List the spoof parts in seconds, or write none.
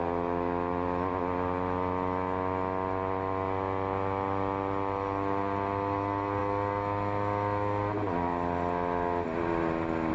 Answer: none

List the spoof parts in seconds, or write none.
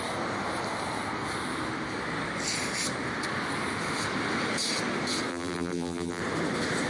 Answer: 5.3-6.2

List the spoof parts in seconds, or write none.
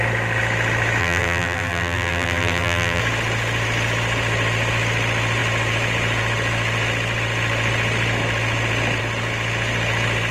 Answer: 1.0-3.0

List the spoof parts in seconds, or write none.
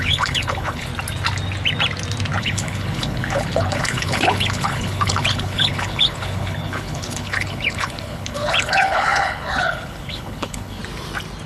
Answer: 0.0-0.9; 2.4-10.8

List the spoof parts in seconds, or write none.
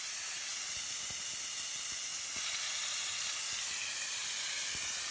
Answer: none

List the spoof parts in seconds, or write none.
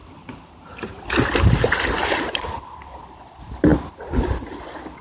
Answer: 0.0-3.7; 4.3-5.0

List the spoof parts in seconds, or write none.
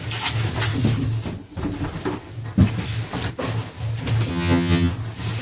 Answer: 4.3-4.9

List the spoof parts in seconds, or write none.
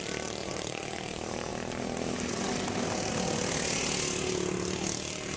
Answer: 0.4-1.0